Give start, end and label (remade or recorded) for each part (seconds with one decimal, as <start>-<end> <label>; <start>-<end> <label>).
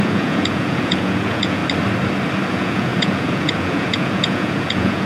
0.0-1.6 remade; 1.6-2.5 recorded; 2.5-5.1 remade